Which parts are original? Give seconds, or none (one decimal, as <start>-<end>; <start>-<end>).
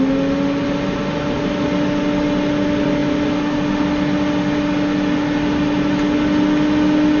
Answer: 0.0-7.2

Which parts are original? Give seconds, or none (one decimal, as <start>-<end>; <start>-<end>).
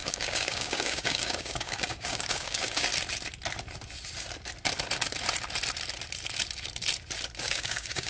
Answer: 2.9-7.4